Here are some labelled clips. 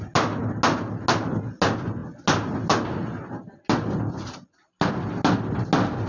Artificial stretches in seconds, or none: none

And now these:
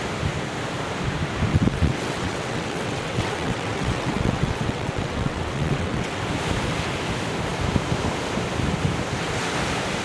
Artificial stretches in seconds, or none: 1.5-6.2 (vocoder, WaveNeXt)

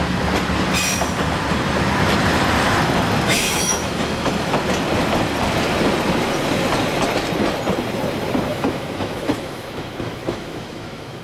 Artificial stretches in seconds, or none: 3.3-4.5 (autoencoder, DAC-VAE); 8.5-11.2

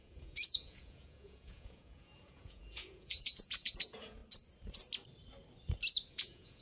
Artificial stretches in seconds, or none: 0.0-4.2 (vocoder, Vocos); 6.1-6.6

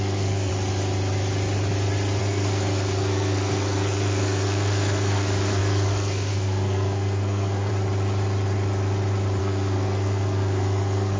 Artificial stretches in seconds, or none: 0.0-0.5 (codec, SNAC); 2.2-7.7; 9.4-11.2

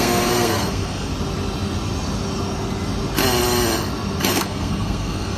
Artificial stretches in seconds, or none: 0.0-1.1 (codec, SNAC); 4.3-5.4

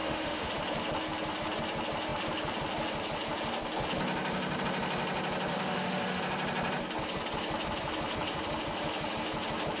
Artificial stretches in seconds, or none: 0.0-0.5 (autoencoder, DAC-VAE); 5.5-6.2

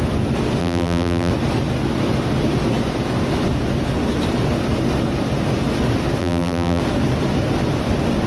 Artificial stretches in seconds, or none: 0.6-1.3 (vocoder, BigVGAN v2); 6.2-6.8